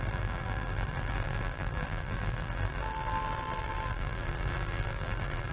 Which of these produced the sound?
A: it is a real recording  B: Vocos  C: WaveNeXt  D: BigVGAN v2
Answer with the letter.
D